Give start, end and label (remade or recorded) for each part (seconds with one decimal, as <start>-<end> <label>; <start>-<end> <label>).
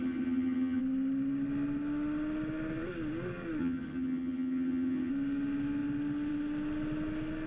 0.0-0.8 remade; 0.8-3.6 recorded; 3.6-5.1 remade; 5.1-7.5 recorded